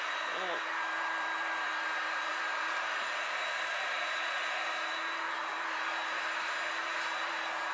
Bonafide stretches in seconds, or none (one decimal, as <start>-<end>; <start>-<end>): none

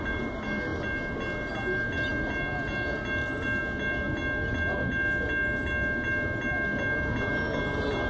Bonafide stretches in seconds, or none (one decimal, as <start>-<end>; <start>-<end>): 0.0-8.1